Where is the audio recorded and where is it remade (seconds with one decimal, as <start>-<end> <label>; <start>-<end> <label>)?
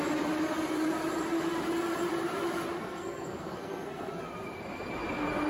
0.0-2.8 recorded; 2.8-4.1 remade; 4.1-5.5 recorded